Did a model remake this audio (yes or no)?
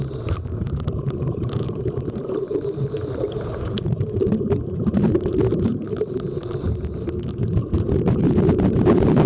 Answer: yes